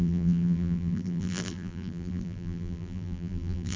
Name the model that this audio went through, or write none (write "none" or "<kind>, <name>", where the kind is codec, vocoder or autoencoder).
vocoder, BigVGAN v2